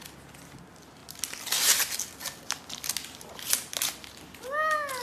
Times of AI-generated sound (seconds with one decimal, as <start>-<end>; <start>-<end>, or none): none